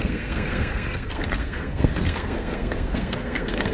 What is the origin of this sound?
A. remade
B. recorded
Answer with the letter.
A